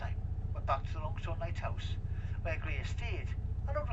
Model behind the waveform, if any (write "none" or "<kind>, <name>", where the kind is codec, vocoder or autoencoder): none